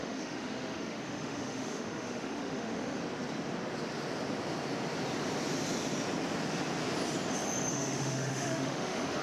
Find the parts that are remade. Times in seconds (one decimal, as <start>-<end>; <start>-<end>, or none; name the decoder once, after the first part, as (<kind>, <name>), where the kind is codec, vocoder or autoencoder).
0.0-3.0 (autoencoder, DAC-VAE); 7.7-9.2